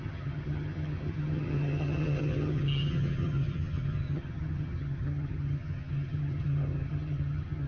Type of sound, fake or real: fake